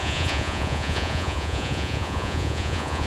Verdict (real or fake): fake